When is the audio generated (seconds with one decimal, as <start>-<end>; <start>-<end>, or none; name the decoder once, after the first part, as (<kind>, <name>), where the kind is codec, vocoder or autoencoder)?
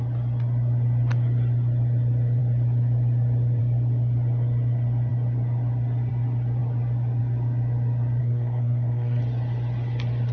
8.2-9.2 (codec, SNAC)